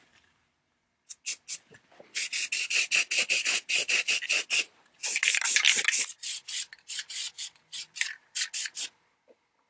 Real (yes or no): yes